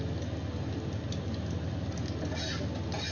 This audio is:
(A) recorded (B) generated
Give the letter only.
A